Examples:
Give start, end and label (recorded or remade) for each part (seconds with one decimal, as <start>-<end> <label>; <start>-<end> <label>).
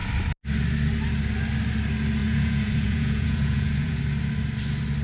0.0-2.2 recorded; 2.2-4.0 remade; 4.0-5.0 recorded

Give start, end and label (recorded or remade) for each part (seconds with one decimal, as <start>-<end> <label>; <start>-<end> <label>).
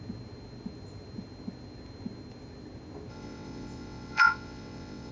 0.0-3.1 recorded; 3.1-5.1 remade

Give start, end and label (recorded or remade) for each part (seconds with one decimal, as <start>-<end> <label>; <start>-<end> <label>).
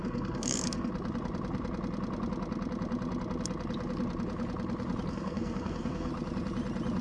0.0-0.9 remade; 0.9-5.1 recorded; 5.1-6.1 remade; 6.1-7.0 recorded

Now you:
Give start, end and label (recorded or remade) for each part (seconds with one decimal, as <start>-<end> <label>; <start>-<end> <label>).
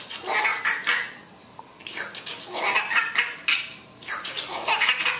0.0-5.2 recorded